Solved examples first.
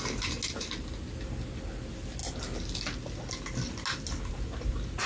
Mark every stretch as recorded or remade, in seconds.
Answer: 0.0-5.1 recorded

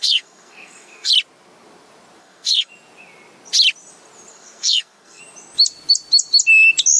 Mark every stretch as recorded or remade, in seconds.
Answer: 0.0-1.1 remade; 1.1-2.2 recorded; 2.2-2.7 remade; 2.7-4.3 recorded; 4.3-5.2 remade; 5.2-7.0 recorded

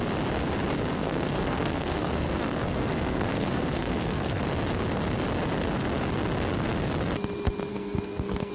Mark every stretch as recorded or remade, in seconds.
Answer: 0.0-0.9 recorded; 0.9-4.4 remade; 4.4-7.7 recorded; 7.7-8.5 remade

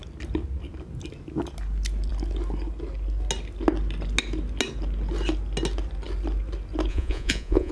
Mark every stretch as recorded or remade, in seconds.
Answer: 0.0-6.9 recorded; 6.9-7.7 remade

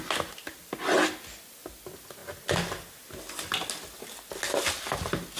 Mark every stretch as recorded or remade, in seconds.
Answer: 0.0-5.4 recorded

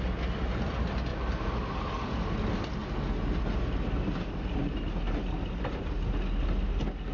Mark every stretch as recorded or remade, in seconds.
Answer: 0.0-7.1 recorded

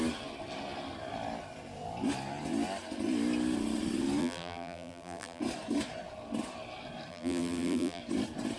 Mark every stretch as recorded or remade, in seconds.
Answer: 0.0-4.2 recorded; 4.2-5.4 remade; 5.4-7.1 recorded; 7.1-8.0 remade; 8.0-8.6 recorded

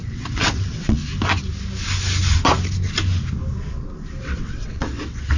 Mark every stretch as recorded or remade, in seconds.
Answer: 0.0-1.0 remade; 1.0-4.2 recorded; 4.2-5.4 remade